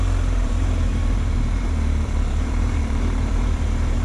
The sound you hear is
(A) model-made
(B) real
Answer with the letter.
A